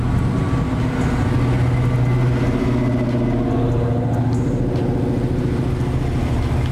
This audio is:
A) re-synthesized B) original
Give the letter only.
B